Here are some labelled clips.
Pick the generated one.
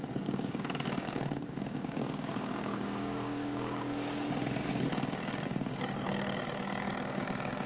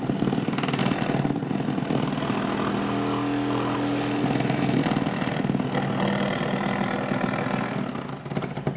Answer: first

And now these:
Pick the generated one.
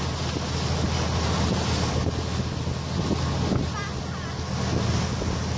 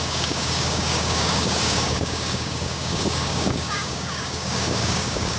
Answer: second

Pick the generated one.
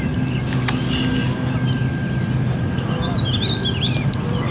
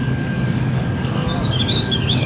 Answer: second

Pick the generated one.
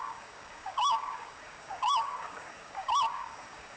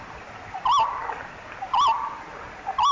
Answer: first